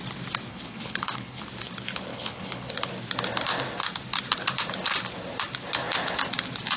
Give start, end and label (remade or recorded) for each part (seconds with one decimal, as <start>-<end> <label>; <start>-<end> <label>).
0.0-0.5 recorded; 0.5-1.4 remade; 1.4-2.1 recorded; 2.1-2.7 remade; 2.7-6.8 recorded